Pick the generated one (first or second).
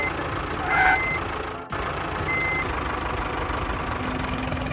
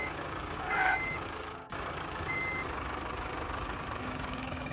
second